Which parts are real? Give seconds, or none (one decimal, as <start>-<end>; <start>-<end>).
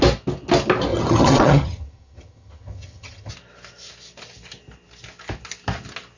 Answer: 0.0-0.9; 3.3-6.2